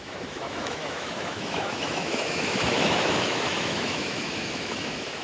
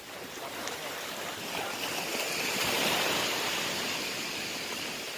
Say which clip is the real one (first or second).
second